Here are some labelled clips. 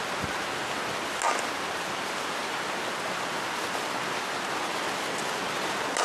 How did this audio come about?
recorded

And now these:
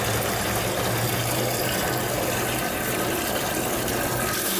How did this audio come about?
recorded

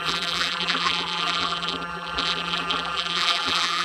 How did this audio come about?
remade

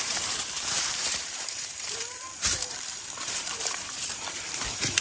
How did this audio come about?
remade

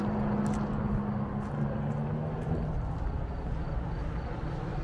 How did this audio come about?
recorded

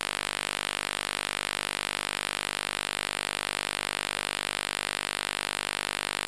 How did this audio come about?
remade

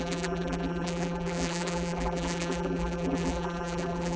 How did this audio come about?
remade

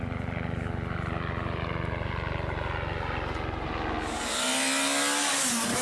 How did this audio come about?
recorded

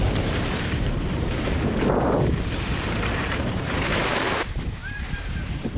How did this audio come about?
remade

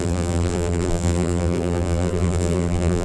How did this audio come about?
remade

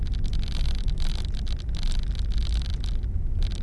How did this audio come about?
recorded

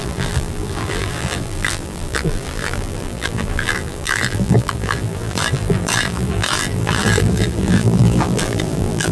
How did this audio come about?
remade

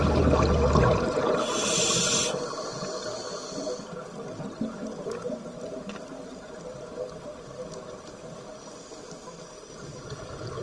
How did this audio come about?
recorded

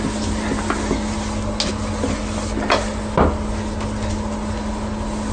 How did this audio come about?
recorded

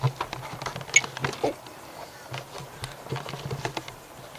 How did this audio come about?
recorded